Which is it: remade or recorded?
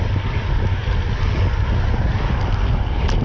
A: recorded